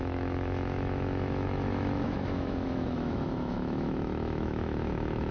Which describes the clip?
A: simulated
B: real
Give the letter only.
A